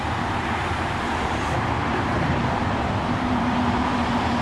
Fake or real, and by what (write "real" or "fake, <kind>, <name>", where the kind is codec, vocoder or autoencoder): fake, vocoder, BigVGAN v2